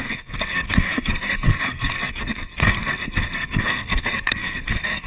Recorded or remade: remade